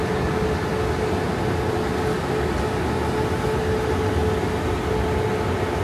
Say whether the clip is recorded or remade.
recorded